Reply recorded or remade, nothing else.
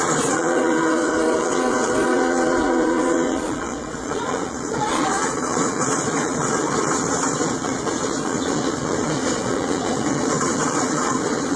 remade